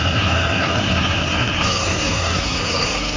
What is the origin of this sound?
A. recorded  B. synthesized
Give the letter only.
B